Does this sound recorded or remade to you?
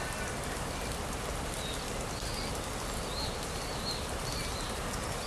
recorded